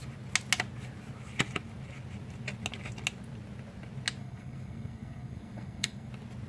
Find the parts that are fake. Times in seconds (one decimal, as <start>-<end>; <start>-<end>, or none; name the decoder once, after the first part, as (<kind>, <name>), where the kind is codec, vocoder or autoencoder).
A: 4.2-6.1 (codec, SNAC)